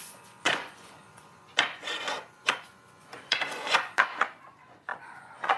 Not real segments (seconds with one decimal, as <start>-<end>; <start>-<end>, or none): 0.0-5.6